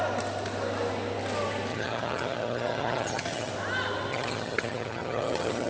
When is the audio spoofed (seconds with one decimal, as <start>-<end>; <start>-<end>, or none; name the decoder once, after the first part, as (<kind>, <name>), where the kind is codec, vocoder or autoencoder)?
1.7-3.5 (vocoder, HiFi-GAN); 4.1-5.7